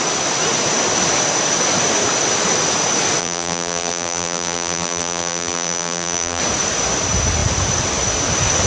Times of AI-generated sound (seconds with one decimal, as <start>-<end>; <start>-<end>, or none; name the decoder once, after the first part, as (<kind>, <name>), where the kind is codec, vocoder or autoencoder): 3.2-6.4 (vocoder, BigVGAN v2)

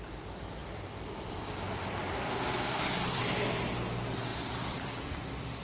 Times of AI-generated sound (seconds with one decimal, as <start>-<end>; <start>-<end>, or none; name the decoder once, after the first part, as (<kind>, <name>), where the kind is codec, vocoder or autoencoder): 0.6-3.2 (vocoder, BigVGAN v2); 4.3-5.6

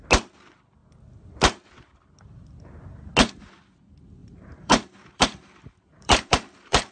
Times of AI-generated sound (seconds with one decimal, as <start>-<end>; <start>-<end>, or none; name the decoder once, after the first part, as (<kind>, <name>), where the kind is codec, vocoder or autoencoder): 4.2-6.9 (vocoder, BigVGAN v2)

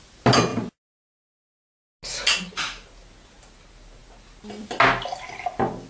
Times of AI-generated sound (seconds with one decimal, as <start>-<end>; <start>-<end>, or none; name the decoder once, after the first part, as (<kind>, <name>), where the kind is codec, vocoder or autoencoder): none

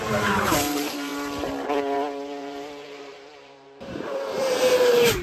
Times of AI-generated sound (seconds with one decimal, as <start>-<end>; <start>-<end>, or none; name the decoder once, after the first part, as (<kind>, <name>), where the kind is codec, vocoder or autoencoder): 0.0-5.2 (vocoder, BigVGAN v2)

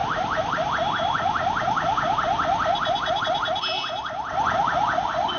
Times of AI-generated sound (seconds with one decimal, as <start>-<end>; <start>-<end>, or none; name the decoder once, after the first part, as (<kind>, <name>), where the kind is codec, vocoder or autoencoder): 0.0-3.2 (vocoder, BigVGAN v2)